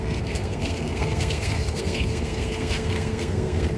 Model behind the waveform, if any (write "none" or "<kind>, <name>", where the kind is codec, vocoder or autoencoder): codec, SNAC